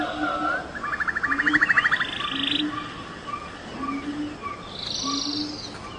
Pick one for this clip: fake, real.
real